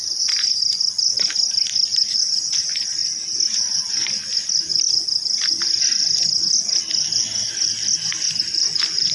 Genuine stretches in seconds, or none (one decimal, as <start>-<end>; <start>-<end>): 0.0-4.7